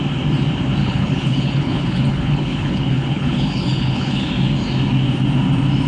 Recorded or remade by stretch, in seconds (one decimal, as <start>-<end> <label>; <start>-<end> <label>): 0.0-0.8 recorded; 0.8-4.3 remade; 4.3-5.9 recorded